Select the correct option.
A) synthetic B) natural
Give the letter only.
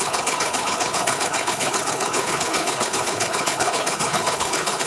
A